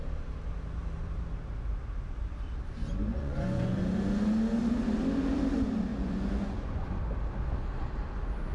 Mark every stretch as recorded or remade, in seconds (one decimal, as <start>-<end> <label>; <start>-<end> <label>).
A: 0.0-3.1 recorded; 3.1-3.8 remade; 3.8-5.9 recorded; 5.9-7.0 remade; 7.0-8.5 recorded